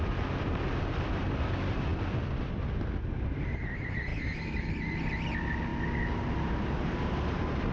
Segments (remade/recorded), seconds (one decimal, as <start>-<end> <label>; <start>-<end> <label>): 0.0-4.1 recorded; 4.1-4.7 remade; 4.7-7.7 recorded